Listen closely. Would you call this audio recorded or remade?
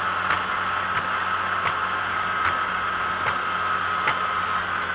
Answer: recorded